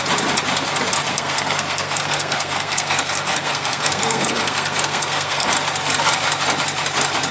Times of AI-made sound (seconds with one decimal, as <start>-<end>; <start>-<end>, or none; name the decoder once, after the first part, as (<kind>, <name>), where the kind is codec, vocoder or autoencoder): 1.1-5.5 (codec, SNAC)